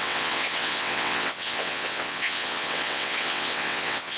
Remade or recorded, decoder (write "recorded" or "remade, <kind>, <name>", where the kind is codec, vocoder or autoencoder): remade, vocoder, WaveNeXt